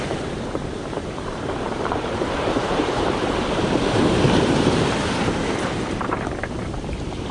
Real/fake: fake